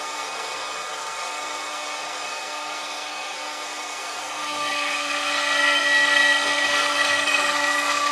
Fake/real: fake